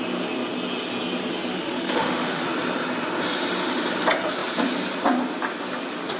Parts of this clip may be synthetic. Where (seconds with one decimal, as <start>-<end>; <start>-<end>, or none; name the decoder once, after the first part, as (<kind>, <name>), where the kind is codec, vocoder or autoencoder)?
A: 1.5-2.4 (autoencoder, DAC-VAE)